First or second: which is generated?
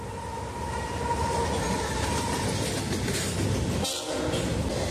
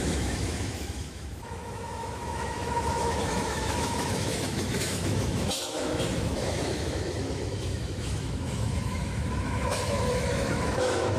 second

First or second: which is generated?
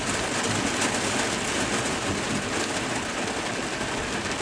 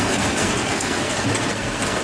second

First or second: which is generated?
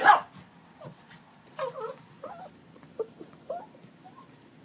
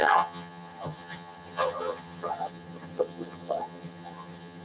second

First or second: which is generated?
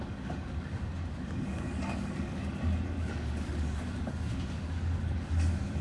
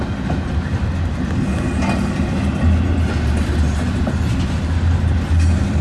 first